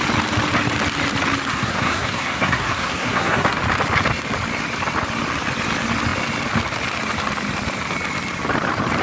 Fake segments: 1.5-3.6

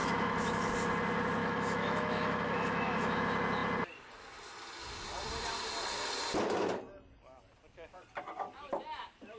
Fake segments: 0.0-0.7; 1.4-3.2